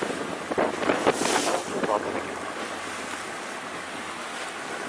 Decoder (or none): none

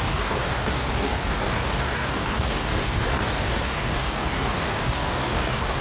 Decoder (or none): codec, DAC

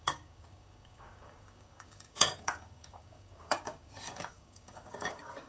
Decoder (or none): codec, DAC